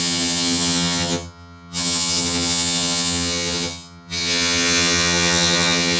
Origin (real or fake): fake